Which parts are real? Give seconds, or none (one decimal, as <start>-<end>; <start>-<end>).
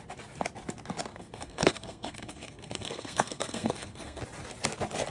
0.0-1.1; 4.2-5.1